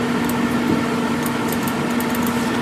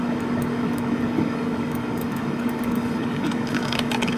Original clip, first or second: first